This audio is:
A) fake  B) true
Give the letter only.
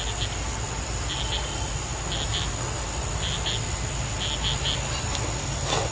B